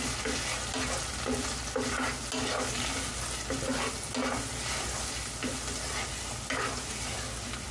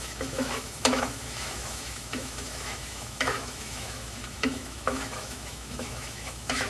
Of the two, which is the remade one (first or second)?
second